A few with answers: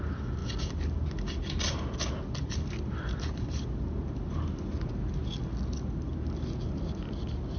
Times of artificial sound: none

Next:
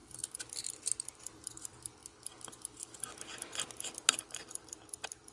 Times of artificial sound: 0.6-2.0 (vocoder, BigVGAN v2); 4.3-5.3

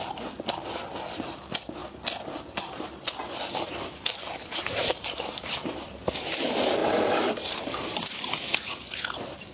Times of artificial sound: 4.5-5.5 (vocoder, BigVGAN v2); 6.8-8.3